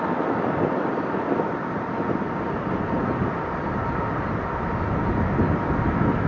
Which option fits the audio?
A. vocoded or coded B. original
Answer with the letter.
B